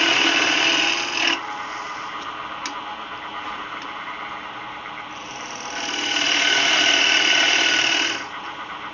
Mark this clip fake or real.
real